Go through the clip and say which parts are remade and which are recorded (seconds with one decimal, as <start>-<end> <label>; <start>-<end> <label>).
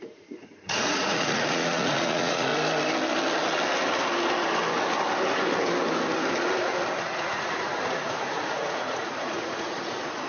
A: 0.0-2.5 remade; 2.5-7.0 recorded; 7.0-10.3 remade